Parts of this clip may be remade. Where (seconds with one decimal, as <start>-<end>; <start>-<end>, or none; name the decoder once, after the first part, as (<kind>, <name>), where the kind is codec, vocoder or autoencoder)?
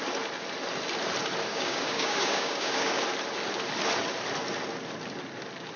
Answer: 1.5-3.0 (codec, DAC)